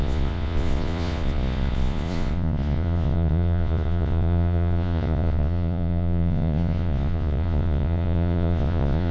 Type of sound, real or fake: fake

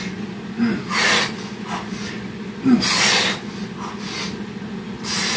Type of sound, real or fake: real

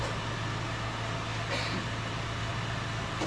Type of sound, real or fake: real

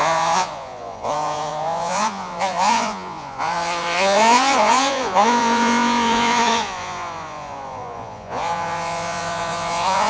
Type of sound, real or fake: fake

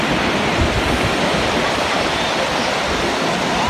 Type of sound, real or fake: real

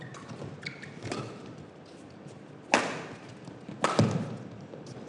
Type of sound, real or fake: real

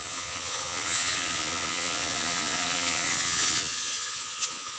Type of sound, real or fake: fake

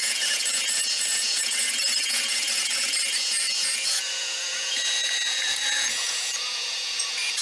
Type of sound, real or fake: fake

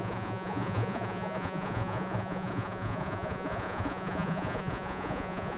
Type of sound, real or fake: fake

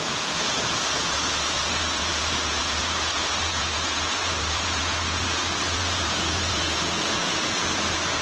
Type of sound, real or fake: fake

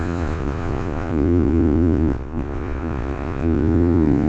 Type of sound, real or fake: fake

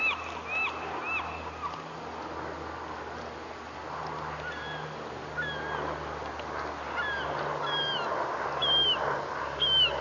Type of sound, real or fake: real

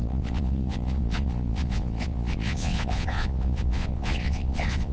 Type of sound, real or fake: fake